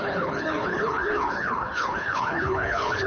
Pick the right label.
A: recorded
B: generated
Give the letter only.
B